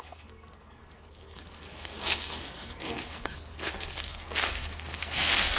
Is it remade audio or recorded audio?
remade